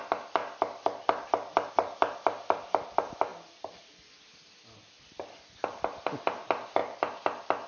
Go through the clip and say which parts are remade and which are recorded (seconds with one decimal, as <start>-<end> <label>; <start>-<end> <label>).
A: 0.0-3.3 recorded; 3.3-3.8 remade; 3.8-7.7 recorded